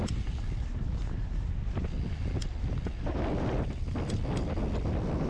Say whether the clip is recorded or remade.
recorded